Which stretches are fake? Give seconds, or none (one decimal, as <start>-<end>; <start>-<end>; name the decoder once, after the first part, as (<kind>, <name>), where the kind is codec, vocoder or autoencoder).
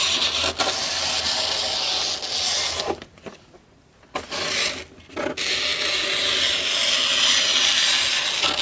none